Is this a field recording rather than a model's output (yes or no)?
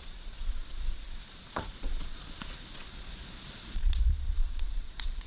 no